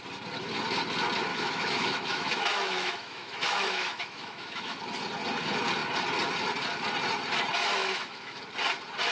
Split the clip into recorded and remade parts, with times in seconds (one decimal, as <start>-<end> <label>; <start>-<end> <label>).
0.0-1.3 recorded; 1.3-4.8 remade; 4.8-7.8 recorded; 7.8-8.4 remade; 8.4-9.1 recorded